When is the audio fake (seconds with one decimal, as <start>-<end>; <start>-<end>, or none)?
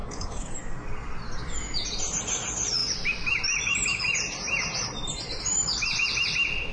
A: 0.0-0.5